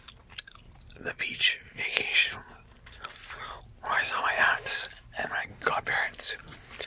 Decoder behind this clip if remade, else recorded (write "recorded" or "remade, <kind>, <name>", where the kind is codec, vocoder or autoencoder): recorded